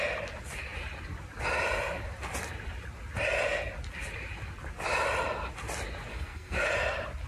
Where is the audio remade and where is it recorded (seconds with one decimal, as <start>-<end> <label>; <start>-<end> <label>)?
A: 0.0-6.1 recorded; 6.1-6.7 remade; 6.7-7.3 recorded